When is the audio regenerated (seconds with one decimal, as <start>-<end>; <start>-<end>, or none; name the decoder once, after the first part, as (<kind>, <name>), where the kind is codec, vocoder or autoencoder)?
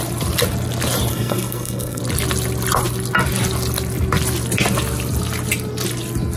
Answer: 1.1-2.0 (codec, SNAC)